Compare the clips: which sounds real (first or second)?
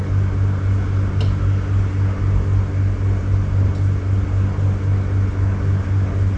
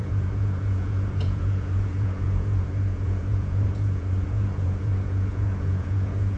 first